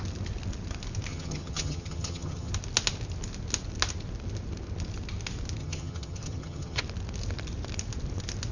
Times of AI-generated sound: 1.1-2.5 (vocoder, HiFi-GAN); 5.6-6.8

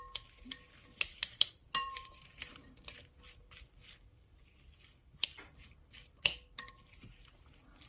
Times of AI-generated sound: 1.1-3.2 (vocoder, BigVGAN v2)

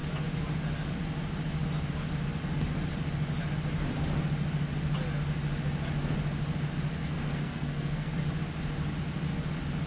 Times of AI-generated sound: 7.0-8.1 (codec, SNAC)